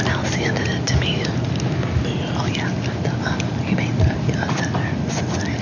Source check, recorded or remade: recorded